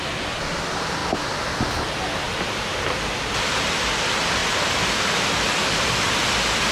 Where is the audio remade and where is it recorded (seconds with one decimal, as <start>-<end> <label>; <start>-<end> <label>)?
0.0-6.7 recorded